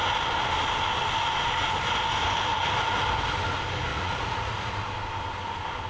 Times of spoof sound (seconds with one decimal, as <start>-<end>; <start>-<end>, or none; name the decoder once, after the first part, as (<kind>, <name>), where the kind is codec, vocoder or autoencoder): 3.9-4.7 (vocoder, Vocos)